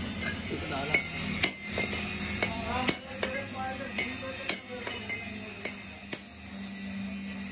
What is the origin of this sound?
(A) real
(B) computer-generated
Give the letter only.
A